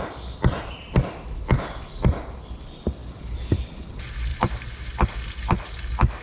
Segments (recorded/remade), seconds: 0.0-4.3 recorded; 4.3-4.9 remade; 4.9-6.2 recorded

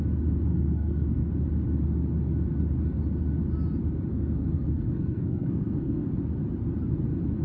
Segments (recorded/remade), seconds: 0.0-0.5 recorded; 0.5-1.3 remade; 1.3-4.1 recorded; 4.1-6.1 remade; 6.1-7.4 recorded

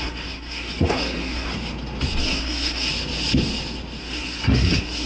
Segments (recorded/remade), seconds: 0.0-1.5 remade; 1.5-2.2 recorded; 2.2-2.9 remade; 2.9-4.0 recorded; 4.0-5.1 remade

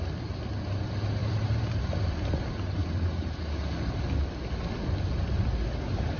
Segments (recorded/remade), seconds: 0.0-1.2 recorded; 1.2-1.8 remade; 1.8-2.8 recorded; 2.8-3.4 remade; 3.4-6.2 recorded

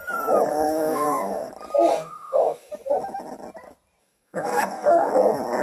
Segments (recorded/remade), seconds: 0.0-0.5 recorded; 0.5-1.5 remade; 1.5-1.9 recorded; 1.9-2.7 remade; 2.7-4.0 recorded; 4.0-5.1 remade; 5.1-5.6 recorded

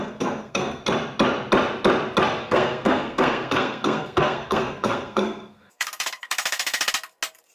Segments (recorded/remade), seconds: 0.0-0.8 remade; 0.8-2.4 recorded; 2.4-6.9 remade; 6.9-7.5 recorded

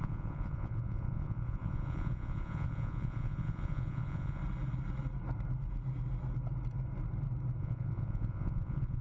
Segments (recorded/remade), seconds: 0.0-4.4 remade; 4.4-7.6 recorded; 7.6-9.0 remade

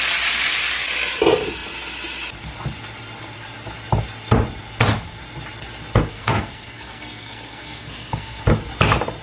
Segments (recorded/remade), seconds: 0.0-6.1 recorded; 6.1-8.4 remade; 8.4-9.2 recorded